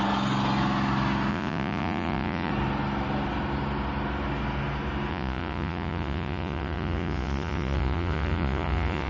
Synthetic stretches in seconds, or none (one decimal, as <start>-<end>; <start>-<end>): 1.3-2.5; 5.1-9.1